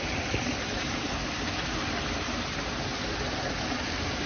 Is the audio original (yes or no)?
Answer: yes